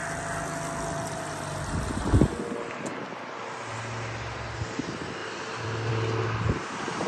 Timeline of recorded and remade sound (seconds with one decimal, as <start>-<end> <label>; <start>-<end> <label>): 0.0-7.1 recorded